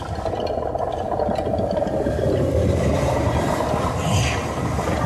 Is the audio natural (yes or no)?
yes